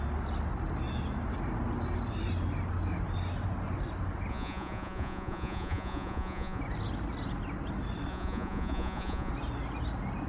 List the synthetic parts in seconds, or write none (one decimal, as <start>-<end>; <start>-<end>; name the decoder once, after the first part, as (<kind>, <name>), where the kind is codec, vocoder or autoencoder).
4.3-6.6 (vocoder, Vocos); 8.1-9.3